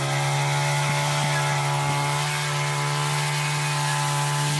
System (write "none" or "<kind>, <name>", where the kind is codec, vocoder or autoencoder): none